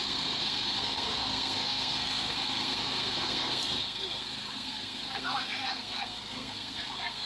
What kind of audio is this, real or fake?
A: fake